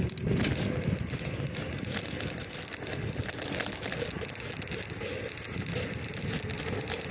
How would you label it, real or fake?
real